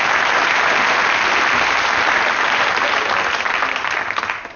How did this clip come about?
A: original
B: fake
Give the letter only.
A